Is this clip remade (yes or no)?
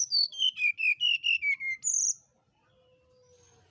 no